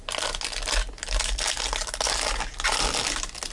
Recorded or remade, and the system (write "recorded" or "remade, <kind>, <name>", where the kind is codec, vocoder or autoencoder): recorded